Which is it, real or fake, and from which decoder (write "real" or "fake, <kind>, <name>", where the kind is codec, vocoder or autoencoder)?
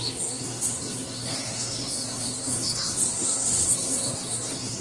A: fake, codec, SNAC